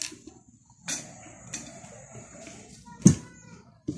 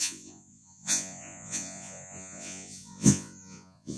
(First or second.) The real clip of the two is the first